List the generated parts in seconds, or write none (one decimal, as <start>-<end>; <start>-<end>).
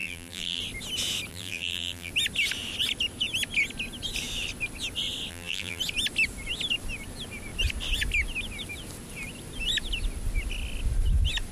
0.0-0.6; 1.3-2.1; 5.3-5.8